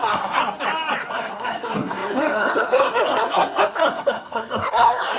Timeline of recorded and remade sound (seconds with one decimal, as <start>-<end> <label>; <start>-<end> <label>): 0.0-0.4 remade; 0.4-1.1 recorded; 1.1-5.2 remade